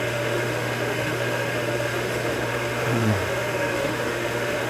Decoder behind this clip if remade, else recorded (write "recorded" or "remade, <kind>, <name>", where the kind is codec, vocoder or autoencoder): remade, autoencoder, DAC-VAE